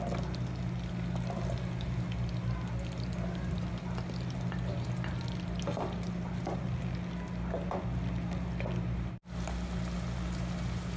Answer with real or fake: real